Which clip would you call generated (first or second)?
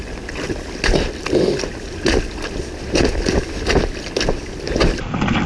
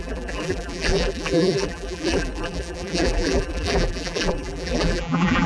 second